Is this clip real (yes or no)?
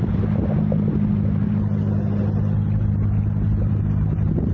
yes